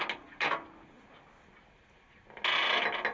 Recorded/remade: recorded